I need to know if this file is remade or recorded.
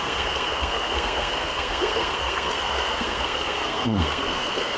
remade